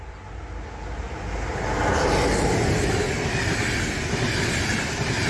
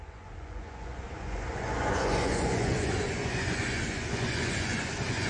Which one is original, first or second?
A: first